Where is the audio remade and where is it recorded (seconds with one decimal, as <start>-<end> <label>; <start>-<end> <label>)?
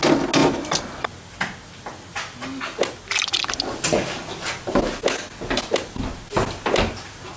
0.0-7.4 recorded